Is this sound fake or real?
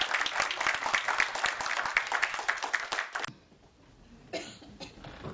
real